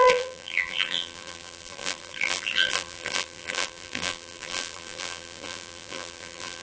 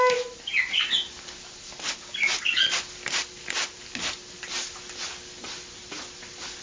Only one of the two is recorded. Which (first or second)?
second